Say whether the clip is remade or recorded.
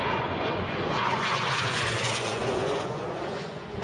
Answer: remade